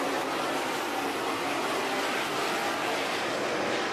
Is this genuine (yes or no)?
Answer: yes